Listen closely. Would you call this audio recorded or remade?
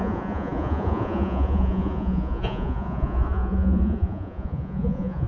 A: remade